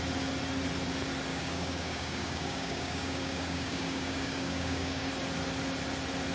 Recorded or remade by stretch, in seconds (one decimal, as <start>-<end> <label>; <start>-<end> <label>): 0.0-1.3 recorded; 1.3-5.1 remade; 5.1-6.3 recorded